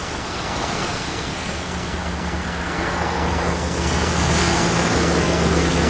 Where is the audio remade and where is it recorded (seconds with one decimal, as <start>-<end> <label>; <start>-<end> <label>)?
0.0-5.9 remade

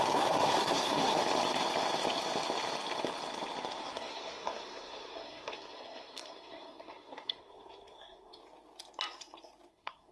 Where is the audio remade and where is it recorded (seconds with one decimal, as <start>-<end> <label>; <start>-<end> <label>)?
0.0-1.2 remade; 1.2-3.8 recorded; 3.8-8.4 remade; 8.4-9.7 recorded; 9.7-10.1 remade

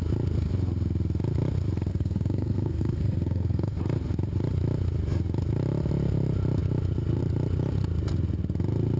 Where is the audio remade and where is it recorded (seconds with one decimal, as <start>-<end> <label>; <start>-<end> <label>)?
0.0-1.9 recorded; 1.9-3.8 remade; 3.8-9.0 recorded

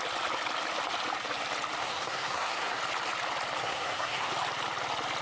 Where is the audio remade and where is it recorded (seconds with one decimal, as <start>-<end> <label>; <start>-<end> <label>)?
0.0-1.8 recorded; 1.8-2.8 remade; 2.8-3.6 recorded; 3.6-4.3 remade; 4.3-5.2 recorded

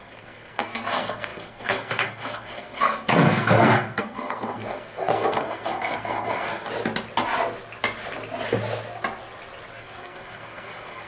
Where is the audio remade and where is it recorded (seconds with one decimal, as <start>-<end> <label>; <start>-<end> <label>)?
0.0-6.7 remade; 6.7-9.7 recorded; 9.7-11.1 remade